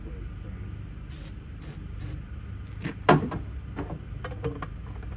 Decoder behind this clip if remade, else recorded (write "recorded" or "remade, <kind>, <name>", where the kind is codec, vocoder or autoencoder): recorded